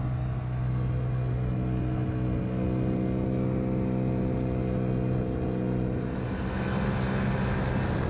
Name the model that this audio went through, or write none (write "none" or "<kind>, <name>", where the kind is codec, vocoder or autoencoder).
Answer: none